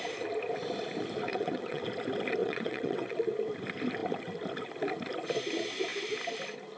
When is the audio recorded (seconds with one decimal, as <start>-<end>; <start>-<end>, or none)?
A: 0.0-1.3; 1.8-2.4; 3.2-6.8